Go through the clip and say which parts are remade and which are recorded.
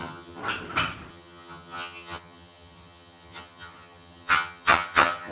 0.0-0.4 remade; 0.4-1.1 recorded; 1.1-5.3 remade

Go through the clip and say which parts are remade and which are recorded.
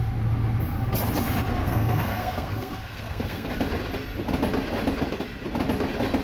0.0-1.6 recorded; 1.6-3.5 remade; 3.5-6.2 recorded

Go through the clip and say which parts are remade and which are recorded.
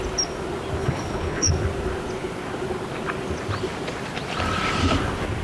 0.0-0.8 recorded; 0.8-1.5 remade; 1.5-5.4 recorded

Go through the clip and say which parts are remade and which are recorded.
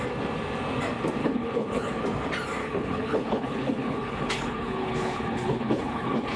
0.0-1.2 recorded; 1.2-2.0 remade; 2.0-2.6 recorded; 2.6-6.4 remade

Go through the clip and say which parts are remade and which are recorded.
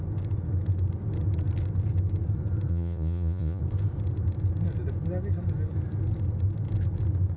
0.0-2.7 recorded; 2.7-3.6 remade; 3.6-7.4 recorded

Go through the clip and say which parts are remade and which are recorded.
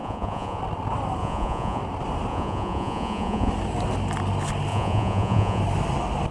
0.0-0.6 remade; 0.6-1.2 recorded; 1.2-1.8 remade; 1.8-2.3 recorded; 2.3-3.5 remade; 3.5-4.7 recorded; 4.7-5.6 remade; 5.6-6.3 recorded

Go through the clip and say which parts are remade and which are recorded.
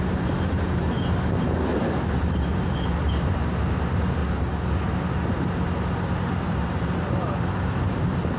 0.0-4.2 remade; 4.2-6.4 recorded; 6.4-8.4 remade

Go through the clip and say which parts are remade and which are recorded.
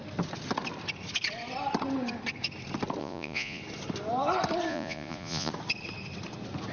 0.0-3.0 recorded; 3.0-3.6 remade; 3.6-4.7 recorded; 4.7-5.5 remade; 5.5-6.7 recorded